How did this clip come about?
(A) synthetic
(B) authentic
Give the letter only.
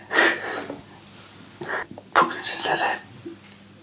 B